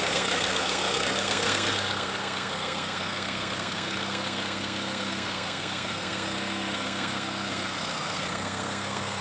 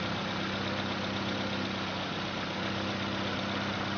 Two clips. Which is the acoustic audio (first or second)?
second